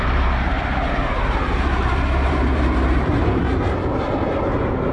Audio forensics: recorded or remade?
remade